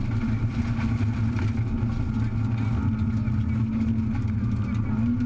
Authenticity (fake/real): real